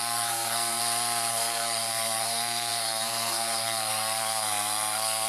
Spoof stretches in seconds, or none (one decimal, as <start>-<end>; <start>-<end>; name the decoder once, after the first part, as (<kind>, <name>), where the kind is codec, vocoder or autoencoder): 0.0-0.8 (codec, SNAC); 1.3-5.3